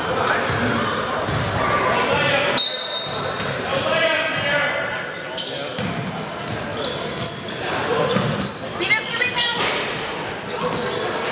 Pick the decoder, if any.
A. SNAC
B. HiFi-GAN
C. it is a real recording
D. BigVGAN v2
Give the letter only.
C